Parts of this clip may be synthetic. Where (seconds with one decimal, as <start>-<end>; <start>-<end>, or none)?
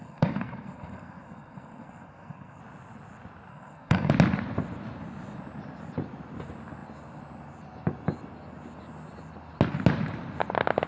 0.0-2.6; 3.5-4.1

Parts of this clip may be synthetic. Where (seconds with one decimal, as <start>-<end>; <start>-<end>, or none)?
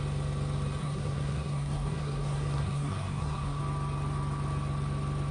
0.8-3.6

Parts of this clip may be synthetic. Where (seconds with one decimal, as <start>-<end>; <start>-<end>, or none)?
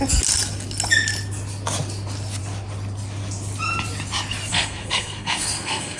4.5-6.0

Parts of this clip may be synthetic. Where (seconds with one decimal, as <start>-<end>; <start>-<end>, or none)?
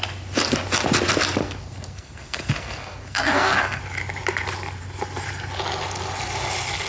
1.4-3.8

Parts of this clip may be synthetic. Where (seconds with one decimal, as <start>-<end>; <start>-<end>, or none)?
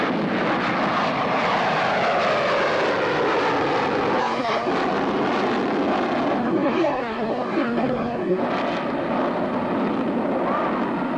4.2-4.7; 6.4-8.4